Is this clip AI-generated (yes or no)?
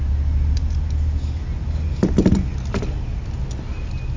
no